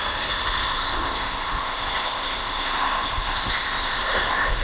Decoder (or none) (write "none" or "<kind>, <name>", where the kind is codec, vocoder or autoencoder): codec, ZipCodec